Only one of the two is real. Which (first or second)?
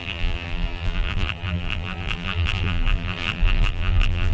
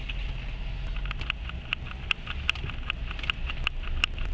second